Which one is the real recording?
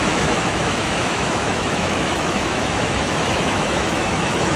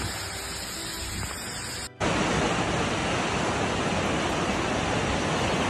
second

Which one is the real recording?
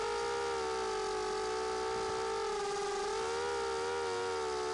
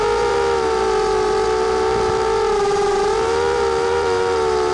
first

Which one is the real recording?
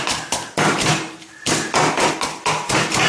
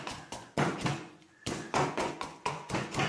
first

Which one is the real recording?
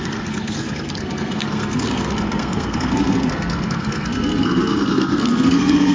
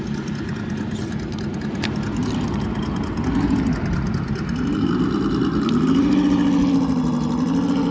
second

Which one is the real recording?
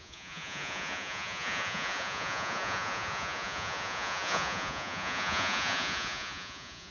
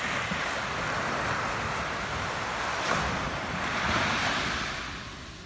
second